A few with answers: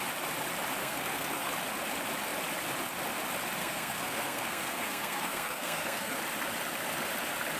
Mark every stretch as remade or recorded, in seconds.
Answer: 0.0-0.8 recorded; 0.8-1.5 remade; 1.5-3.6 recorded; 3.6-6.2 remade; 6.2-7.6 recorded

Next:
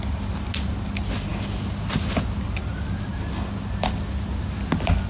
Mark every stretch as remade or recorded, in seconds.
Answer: 0.0-5.1 recorded

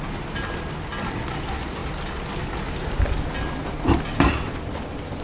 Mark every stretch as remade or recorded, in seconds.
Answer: 0.0-5.2 recorded

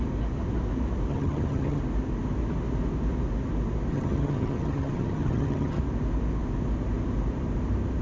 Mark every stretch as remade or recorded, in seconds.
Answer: 0.0-1.1 recorded; 1.1-1.8 remade; 1.8-3.9 recorded; 3.9-5.8 remade; 5.8-8.0 recorded

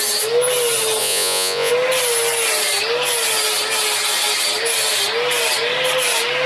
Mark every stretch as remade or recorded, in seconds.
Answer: 0.0-1.0 recorded; 1.0-1.7 remade; 1.7-6.5 recorded

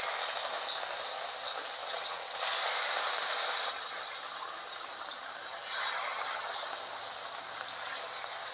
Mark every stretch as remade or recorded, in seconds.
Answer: 0.0-1.8 recorded; 1.8-2.4 remade; 2.4-8.5 recorded